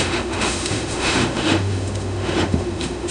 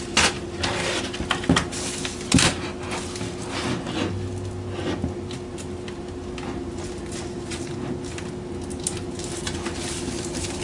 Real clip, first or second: second